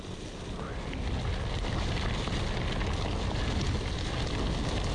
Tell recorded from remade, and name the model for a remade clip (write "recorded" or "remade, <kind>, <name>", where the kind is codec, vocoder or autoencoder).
recorded